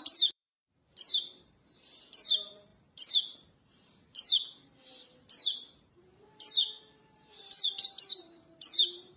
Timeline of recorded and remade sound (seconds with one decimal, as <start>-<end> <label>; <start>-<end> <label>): 0.0-9.2 remade